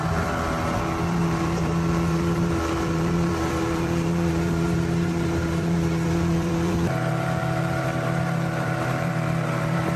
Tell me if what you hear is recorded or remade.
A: remade